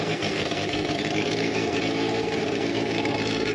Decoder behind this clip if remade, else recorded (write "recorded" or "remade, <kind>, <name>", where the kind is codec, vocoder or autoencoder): remade, codec, SNAC